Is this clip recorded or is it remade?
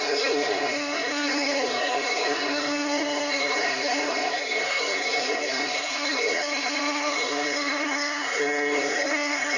remade